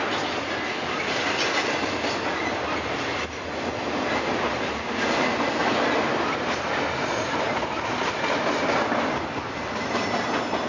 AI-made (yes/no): no